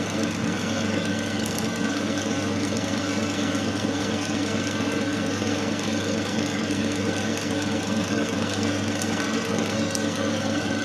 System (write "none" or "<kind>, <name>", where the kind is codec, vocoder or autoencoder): codec, SNAC